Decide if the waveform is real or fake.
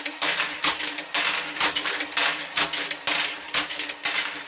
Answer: real